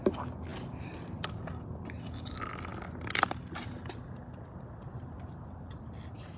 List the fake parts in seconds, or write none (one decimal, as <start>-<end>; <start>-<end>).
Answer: none